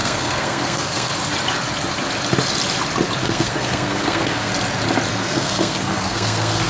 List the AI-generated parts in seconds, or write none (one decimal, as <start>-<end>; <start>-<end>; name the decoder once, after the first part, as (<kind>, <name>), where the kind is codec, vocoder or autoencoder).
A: 0.0-1.1 (codec, SNAC); 3.2-4.5; 5.1-6.7